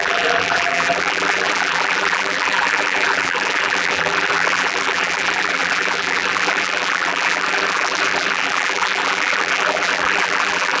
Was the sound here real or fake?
fake